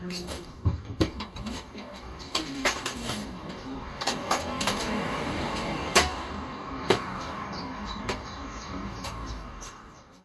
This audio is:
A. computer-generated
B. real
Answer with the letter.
A